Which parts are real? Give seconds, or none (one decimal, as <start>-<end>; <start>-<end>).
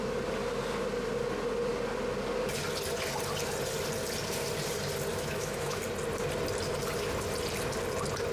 0.0-5.1; 5.8-8.3